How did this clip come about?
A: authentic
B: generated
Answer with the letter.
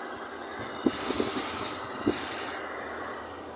A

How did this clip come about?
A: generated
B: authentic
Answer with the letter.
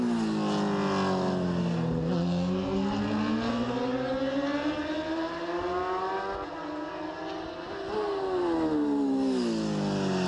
B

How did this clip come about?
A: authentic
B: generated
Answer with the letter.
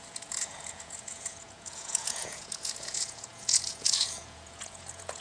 B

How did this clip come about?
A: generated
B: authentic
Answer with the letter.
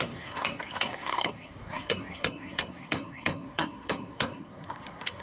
A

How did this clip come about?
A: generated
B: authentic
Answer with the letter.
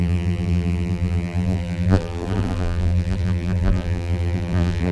A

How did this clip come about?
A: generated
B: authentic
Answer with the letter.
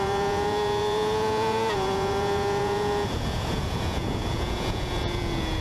A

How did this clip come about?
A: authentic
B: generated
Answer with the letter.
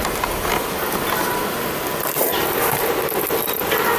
A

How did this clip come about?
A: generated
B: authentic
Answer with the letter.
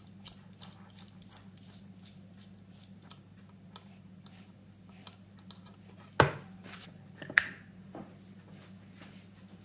B